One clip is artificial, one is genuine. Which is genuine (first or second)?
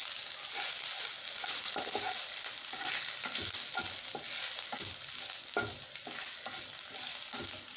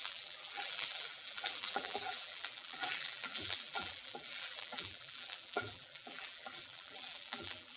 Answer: first